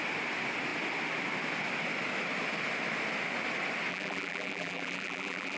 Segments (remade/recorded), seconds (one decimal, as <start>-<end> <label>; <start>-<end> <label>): 0.0-3.9 recorded; 3.9-5.6 remade